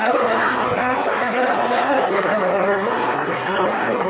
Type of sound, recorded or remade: remade